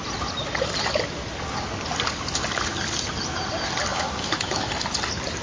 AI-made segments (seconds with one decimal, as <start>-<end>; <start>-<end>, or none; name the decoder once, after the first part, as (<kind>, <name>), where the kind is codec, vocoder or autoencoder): 3.9-4.7 (autoencoder, DAC-VAE)